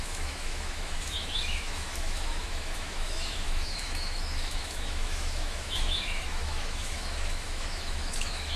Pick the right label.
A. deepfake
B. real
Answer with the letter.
A